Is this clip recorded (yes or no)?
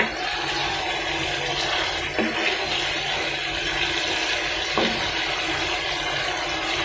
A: yes